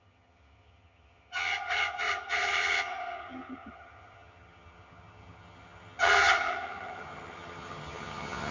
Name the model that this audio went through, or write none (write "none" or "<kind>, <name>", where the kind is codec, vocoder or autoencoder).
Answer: vocoder, HiFi-GAN